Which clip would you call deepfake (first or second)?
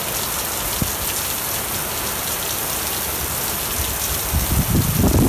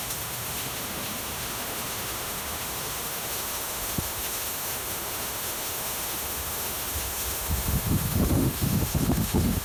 second